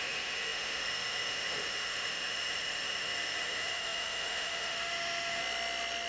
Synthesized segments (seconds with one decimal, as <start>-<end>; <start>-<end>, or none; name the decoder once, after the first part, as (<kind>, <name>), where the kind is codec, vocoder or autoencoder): 0.0-5.4 (autoencoder, DAC-VAE)